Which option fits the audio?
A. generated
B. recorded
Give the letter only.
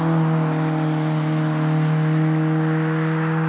B